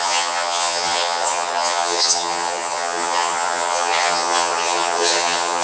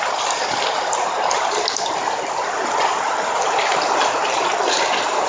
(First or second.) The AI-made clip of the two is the first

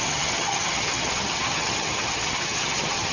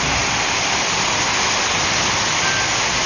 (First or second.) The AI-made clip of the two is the first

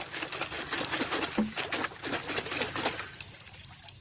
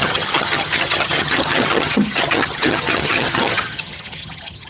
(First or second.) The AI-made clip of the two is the second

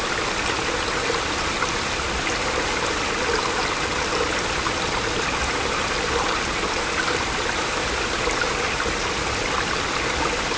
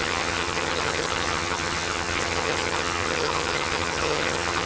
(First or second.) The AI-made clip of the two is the second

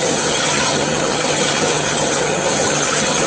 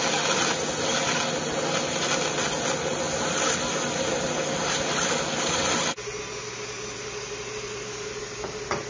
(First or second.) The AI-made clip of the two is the first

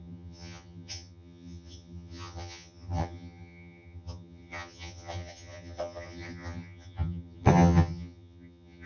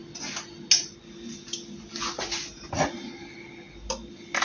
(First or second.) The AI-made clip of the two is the first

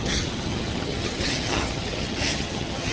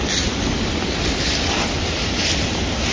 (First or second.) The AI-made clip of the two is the first